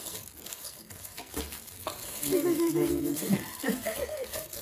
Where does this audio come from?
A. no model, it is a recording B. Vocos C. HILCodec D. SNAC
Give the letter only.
D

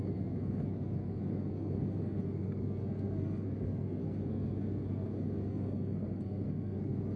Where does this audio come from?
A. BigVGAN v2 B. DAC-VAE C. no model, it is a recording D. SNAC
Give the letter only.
D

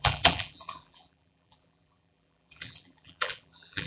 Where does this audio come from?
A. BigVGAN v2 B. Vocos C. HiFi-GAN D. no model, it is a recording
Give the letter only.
A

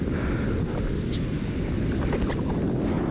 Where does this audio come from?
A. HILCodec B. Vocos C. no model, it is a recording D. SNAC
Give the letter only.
C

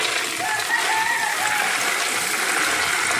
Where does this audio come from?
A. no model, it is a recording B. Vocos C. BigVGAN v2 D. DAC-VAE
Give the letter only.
A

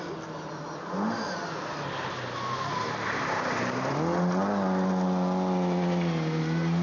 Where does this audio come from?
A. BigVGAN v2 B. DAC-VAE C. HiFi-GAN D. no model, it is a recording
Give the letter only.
D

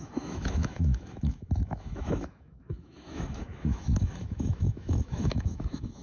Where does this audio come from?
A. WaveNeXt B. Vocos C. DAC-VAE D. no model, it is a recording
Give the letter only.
C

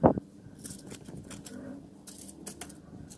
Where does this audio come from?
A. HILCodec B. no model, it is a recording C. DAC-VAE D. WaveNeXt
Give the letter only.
B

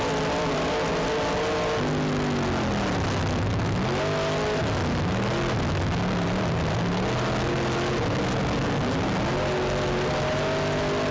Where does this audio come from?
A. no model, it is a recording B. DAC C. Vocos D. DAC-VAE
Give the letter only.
A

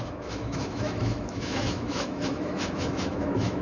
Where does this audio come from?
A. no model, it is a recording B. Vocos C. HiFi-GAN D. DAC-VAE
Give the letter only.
D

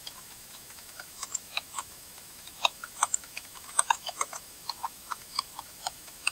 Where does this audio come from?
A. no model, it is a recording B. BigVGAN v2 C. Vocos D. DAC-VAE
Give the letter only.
D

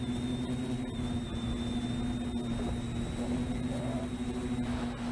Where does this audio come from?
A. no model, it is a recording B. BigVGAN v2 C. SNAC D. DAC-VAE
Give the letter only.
A